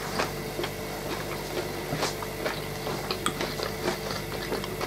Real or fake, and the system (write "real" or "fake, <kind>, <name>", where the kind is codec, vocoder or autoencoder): real